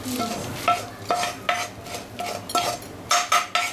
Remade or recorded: recorded